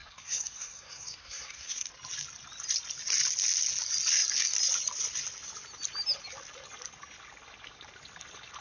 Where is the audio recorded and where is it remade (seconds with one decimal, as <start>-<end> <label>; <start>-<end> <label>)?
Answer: 0.0-1.9 remade; 1.9-8.6 recorded